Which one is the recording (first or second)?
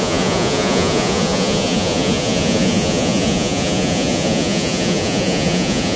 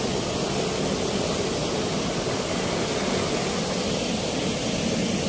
second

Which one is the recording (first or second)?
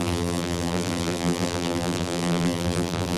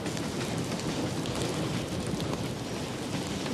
second